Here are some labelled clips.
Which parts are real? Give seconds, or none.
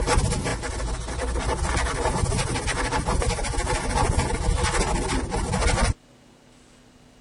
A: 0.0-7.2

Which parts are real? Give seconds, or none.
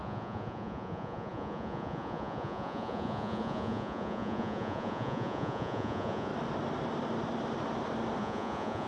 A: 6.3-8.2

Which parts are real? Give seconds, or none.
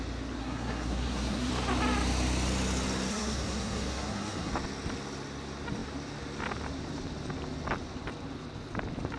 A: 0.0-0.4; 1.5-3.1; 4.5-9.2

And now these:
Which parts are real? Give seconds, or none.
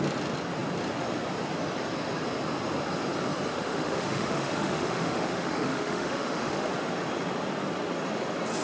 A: 0.0-3.5; 6.7-8.6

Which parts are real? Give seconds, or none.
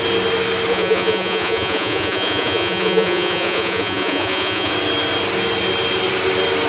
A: 0.0-0.7; 4.7-6.7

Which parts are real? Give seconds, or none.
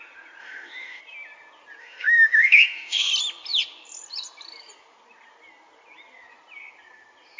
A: 0.0-0.4; 1.0-1.8; 3.1-7.4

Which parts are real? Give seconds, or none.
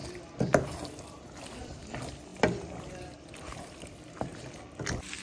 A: 0.0-5.2